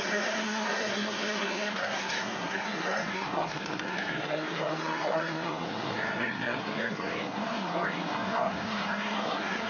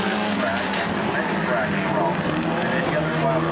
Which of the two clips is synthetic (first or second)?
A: first